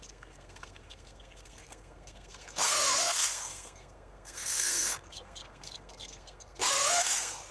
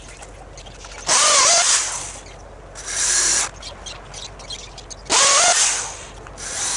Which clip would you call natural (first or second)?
second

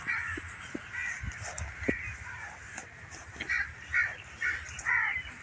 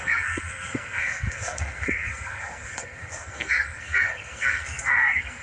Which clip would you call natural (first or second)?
first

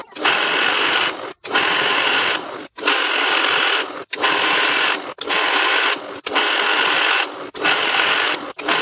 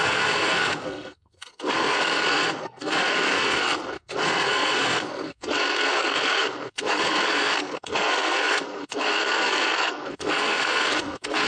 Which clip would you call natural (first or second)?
first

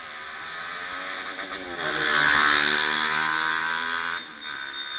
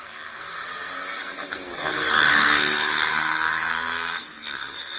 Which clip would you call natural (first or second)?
first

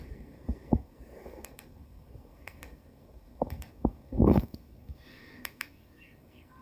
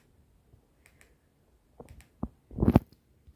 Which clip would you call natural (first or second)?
second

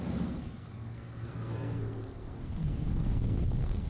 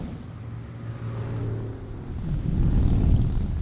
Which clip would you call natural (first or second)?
second